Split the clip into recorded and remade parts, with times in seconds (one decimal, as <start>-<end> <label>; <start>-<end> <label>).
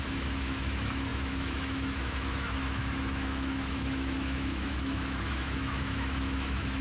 0.0-6.8 remade